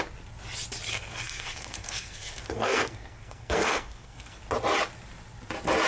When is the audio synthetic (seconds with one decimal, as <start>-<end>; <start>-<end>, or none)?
0.9-4.4